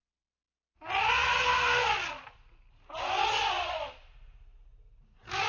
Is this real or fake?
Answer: real